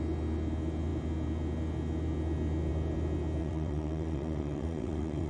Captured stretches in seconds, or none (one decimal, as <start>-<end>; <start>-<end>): 0.0-3.4